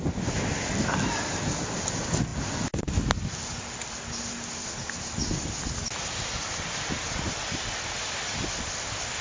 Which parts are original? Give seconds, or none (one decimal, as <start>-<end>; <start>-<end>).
0.0-9.2